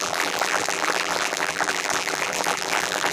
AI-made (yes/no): yes